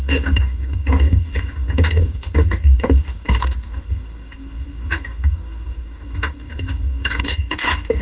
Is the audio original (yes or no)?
no